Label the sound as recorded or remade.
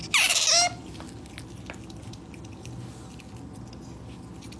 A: recorded